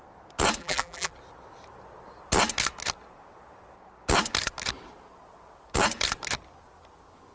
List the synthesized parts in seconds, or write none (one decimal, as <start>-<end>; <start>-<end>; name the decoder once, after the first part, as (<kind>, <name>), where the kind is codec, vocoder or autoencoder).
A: 0.6-1.1 (vocoder, BigVGAN v2)